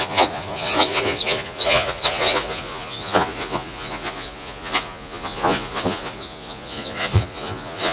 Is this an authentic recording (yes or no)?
no